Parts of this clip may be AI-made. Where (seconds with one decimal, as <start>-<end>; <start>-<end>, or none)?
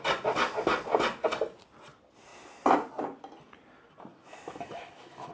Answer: 4.1-5.3